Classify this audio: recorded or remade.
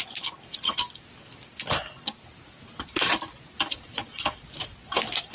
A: recorded